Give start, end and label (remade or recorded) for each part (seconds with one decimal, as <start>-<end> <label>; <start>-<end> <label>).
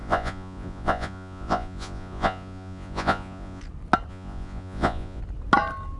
0.0-3.6 remade; 3.6-4.1 recorded; 4.1-5.2 remade; 5.2-6.0 recorded